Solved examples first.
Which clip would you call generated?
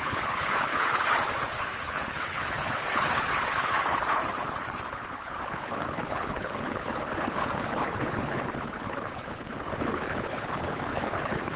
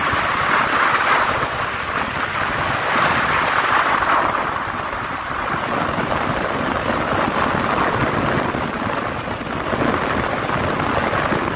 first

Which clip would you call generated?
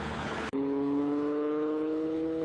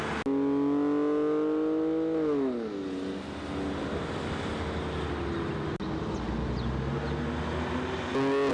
first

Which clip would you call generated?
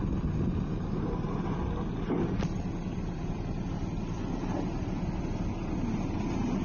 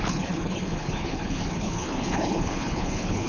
second